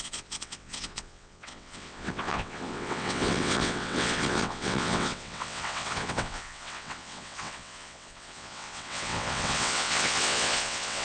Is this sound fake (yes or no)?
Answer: yes